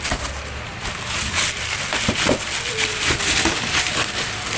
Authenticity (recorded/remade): recorded